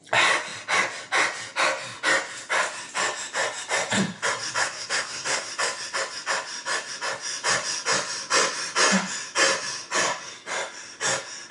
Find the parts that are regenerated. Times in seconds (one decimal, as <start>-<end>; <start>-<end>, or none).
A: 4.6-5.5